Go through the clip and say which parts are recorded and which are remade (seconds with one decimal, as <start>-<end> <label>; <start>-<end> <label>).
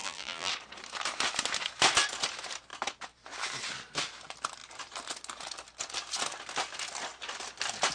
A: 0.0-0.5 remade; 0.5-7.9 recorded